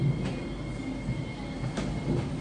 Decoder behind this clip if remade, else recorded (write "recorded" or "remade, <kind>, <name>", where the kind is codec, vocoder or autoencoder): recorded